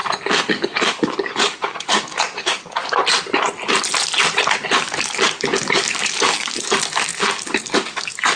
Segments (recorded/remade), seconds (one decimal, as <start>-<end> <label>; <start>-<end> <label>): 0.0-0.5 recorded; 0.5-3.0 remade; 3.0-4.7 recorded; 4.7-8.4 remade